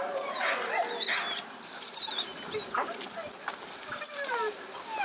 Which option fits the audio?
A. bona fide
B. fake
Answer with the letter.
A